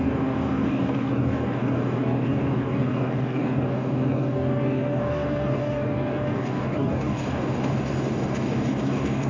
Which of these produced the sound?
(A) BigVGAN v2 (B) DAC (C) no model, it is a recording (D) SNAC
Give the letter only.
B